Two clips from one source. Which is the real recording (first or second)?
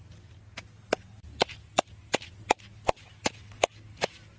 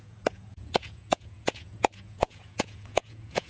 first